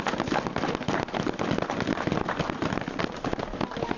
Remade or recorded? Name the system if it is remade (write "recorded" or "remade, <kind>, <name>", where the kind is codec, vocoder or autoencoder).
recorded